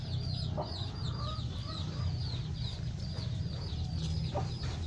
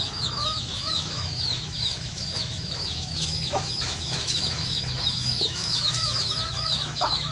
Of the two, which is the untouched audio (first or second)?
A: first